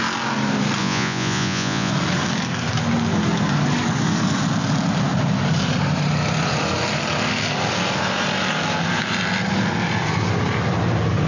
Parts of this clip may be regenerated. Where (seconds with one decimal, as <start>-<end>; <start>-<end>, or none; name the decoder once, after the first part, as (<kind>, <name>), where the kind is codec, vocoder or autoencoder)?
0.8-1.9 (vocoder, Vocos)